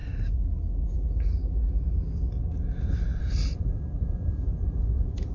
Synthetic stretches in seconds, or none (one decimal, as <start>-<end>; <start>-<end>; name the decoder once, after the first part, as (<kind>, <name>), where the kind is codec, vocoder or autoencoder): none